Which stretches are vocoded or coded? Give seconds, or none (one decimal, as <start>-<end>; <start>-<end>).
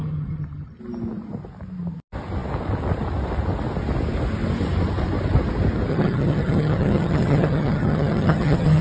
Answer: 0.0-0.8; 5.9-8.8